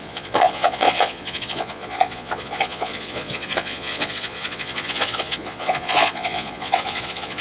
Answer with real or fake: fake